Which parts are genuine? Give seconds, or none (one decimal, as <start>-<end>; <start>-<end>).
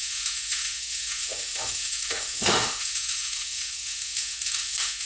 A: none